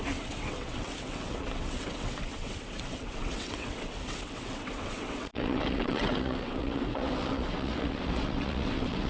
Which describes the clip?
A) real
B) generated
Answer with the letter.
B